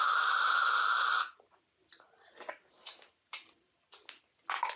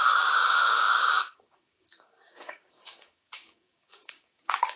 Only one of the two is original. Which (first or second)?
first